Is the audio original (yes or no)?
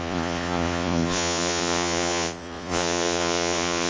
no